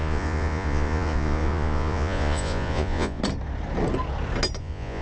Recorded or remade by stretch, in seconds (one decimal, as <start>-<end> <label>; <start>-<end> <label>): 0.0-3.2 remade; 3.2-4.6 recorded; 4.6-5.0 remade

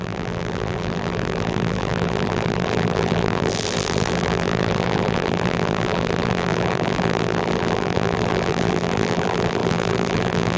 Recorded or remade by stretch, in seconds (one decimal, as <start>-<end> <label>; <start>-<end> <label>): 0.0-10.6 remade

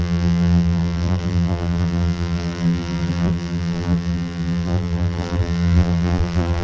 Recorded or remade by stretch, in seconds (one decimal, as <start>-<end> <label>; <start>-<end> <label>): 0.0-6.6 remade

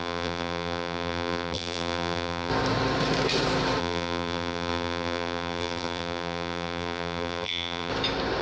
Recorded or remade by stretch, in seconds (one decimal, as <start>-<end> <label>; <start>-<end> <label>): 0.0-2.5 remade; 2.5-3.8 recorded; 3.8-7.9 remade; 7.9-8.4 recorded

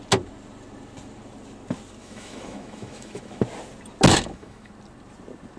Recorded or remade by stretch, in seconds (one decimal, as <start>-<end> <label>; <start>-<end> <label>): 0.0-2.0 recorded; 2.0-3.4 remade; 3.4-4.1 recorded; 4.1-4.7 remade; 4.7-5.6 recorded

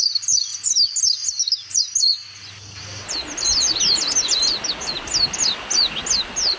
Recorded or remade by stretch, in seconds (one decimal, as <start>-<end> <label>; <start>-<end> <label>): 0.0-6.6 recorded

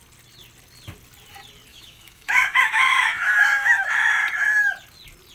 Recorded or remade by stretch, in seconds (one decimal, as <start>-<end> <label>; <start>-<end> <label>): 0.0-1.7 recorded; 1.7-4.1 remade; 4.1-5.3 recorded